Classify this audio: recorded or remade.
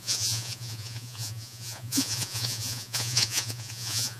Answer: remade